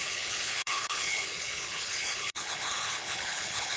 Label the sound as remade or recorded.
remade